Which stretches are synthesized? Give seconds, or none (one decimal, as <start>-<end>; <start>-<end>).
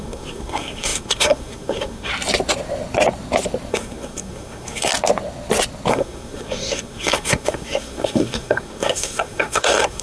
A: 0.0-2.1; 3.7-4.9; 5.9-10.0